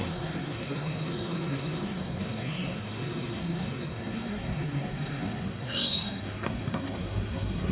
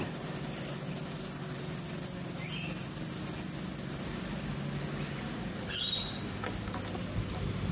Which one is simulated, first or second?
first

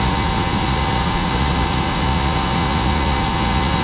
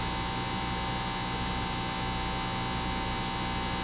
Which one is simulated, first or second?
first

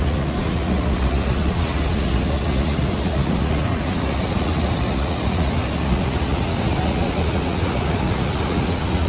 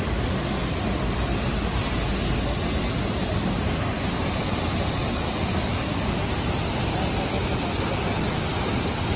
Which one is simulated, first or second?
first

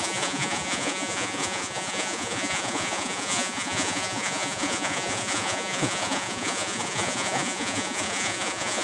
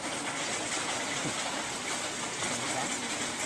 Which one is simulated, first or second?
first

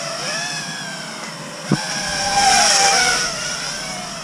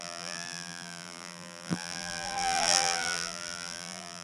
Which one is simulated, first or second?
second